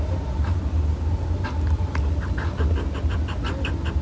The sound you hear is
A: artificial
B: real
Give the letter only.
B